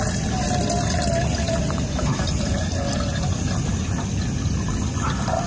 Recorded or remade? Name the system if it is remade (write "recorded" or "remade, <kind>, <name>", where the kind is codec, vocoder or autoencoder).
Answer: recorded